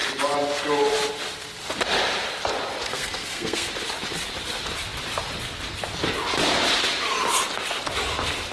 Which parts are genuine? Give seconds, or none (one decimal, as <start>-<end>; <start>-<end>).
0.0-2.9; 3.7-8.5